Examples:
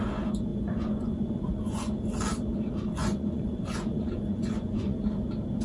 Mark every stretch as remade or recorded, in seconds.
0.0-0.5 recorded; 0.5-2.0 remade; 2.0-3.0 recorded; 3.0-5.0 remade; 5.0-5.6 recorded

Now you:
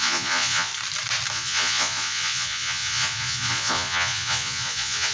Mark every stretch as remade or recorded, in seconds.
0.0-0.7 remade; 0.7-1.3 recorded; 1.3-5.1 remade